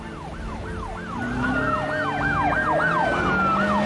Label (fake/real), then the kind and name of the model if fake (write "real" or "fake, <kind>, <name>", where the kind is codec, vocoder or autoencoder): real